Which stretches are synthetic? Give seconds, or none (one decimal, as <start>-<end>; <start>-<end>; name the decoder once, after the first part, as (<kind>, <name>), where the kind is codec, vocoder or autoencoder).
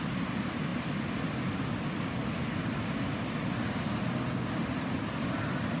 none